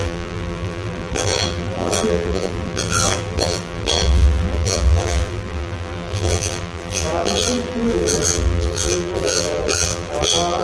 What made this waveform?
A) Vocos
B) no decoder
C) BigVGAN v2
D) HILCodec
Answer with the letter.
C